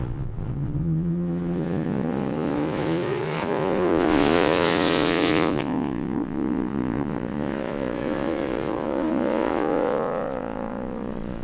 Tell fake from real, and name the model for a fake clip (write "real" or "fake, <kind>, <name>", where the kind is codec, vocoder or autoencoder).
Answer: fake, vocoder, Vocos